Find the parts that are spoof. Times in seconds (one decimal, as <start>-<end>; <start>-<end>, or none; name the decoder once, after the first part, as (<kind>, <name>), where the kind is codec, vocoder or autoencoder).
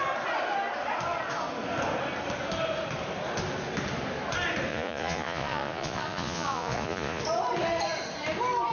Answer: 4.7-7.2 (vocoder, Vocos)